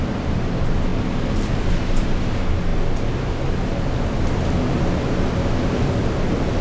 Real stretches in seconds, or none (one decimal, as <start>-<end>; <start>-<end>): 0.0-6.6